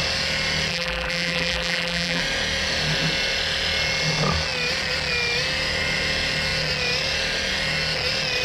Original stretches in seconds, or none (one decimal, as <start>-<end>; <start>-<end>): 0.0-0.7; 2.2-8.4